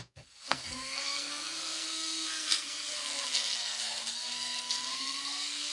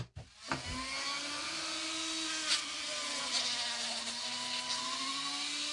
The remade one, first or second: first